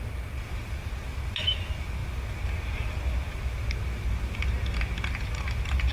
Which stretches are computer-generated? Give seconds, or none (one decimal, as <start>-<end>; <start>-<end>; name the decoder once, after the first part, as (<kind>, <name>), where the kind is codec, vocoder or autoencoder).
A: none